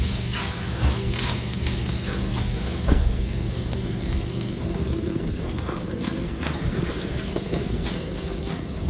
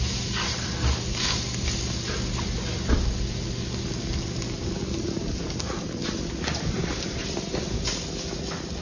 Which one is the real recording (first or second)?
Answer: second